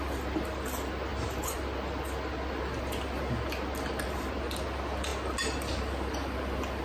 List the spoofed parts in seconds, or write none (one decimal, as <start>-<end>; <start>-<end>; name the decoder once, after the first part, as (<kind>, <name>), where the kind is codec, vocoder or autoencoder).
none